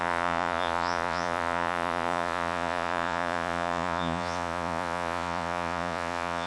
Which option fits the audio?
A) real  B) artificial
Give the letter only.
B